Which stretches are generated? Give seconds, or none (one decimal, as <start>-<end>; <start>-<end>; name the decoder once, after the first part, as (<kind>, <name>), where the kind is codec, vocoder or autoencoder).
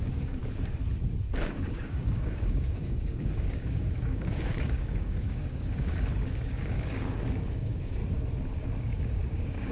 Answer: 0.0-0.4 (codec, DAC); 1.4-8.0; 8.8-9.7